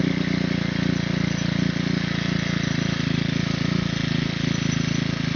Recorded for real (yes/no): yes